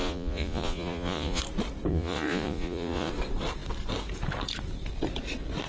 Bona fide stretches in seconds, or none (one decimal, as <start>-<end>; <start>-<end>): 1.4-1.9; 3.1-5.7